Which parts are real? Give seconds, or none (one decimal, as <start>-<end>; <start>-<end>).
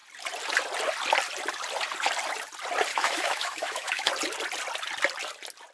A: 0.0-2.9; 4.1-5.7